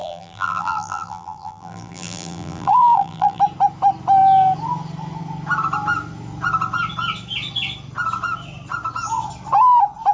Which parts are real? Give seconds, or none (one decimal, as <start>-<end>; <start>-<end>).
3.4-10.1